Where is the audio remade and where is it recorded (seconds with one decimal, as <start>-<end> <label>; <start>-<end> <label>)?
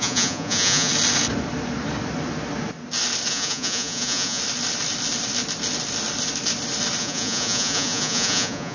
0.0-0.9 remade; 0.9-3.3 recorded; 3.3-4.4 remade; 4.4-7.0 recorded; 7.0-8.7 remade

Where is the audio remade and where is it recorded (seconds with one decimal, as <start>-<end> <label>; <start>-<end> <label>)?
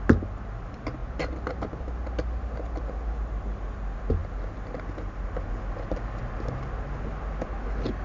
0.0-8.0 recorded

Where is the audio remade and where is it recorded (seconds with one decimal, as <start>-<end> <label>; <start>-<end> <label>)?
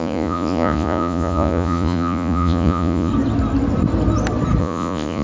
0.0-3.1 remade; 3.1-4.6 recorded; 4.6-5.2 remade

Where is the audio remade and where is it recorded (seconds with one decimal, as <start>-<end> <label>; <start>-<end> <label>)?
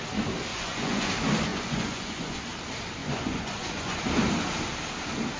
0.0-0.5 recorded; 0.5-1.1 remade; 1.1-1.5 recorded; 1.5-2.4 remade; 2.4-3.0 recorded; 3.0-4.0 remade; 4.0-5.4 recorded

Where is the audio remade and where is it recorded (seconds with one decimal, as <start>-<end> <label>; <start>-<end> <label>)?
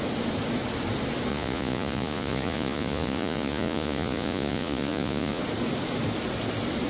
0.0-1.3 recorded; 1.3-5.4 remade; 5.4-6.9 recorded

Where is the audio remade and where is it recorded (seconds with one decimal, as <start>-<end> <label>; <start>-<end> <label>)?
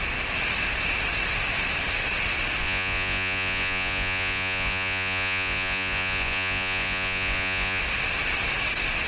0.0-2.6 recorded; 2.6-7.8 remade; 7.8-9.1 recorded